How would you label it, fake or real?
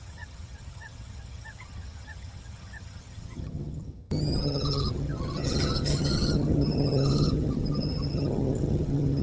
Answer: fake